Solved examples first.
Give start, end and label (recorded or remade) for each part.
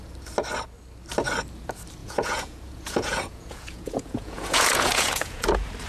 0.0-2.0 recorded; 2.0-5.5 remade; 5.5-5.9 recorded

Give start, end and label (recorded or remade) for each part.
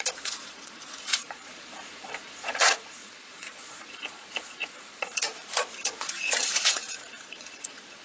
0.0-8.0 remade